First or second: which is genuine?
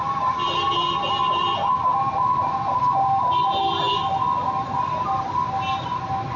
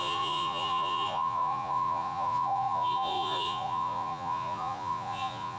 first